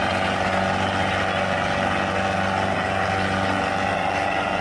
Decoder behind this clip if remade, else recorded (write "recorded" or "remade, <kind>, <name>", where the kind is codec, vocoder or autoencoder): recorded